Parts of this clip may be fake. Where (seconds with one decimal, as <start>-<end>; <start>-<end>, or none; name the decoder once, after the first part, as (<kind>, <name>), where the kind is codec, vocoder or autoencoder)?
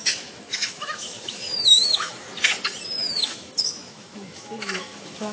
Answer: 0.0-2.3 (autoencoder, DAC-VAE); 3.0-5.3